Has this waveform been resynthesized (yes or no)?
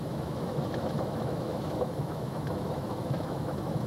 yes